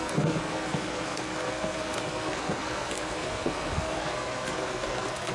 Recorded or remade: remade